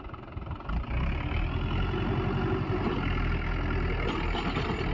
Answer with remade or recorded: recorded